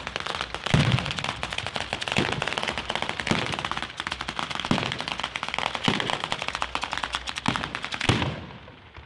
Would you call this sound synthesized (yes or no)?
no